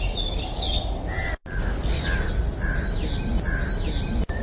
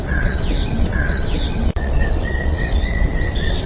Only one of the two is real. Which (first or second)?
first